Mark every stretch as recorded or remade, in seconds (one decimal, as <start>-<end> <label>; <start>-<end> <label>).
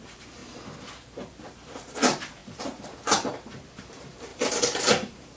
0.0-0.4 remade; 0.4-1.4 recorded; 1.4-5.4 remade